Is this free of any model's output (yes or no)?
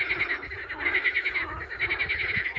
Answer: yes